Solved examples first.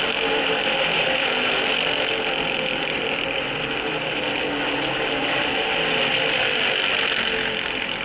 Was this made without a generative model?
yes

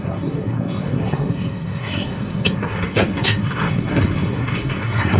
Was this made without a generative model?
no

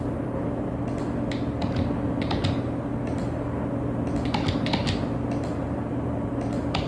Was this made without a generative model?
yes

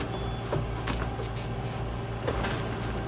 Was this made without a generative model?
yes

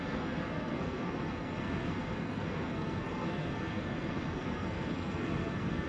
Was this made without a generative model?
no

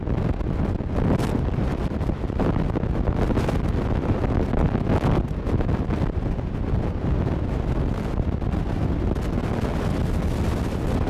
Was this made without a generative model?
yes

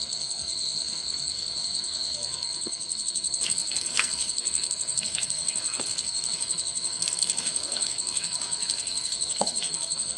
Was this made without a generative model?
no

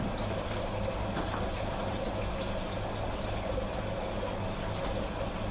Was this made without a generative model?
yes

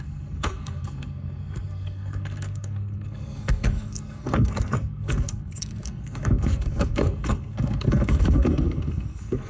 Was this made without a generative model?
no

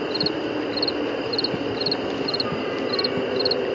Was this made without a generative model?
yes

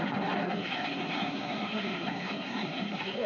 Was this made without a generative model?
no